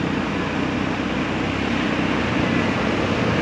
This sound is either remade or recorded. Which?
recorded